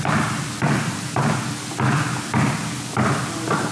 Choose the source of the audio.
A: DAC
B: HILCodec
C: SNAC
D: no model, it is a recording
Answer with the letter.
D